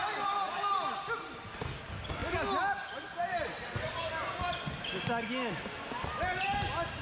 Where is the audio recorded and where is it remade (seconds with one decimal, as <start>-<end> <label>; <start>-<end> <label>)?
0.0-7.0 recorded